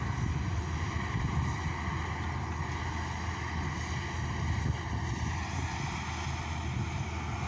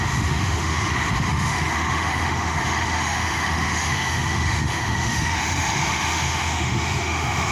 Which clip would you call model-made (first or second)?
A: second